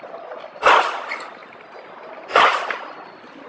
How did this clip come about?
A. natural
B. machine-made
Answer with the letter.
A